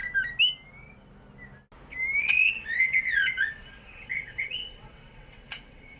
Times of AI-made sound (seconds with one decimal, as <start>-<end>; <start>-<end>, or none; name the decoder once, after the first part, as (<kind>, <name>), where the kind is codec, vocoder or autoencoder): 2.2-6.0 (vocoder, WaveNeXt)